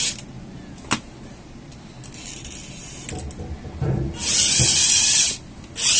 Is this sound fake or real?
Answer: real